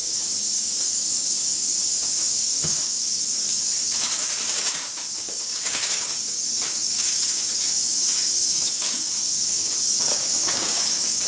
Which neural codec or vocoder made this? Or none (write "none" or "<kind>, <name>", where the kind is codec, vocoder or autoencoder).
codec, DAC